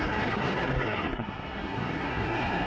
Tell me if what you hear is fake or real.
fake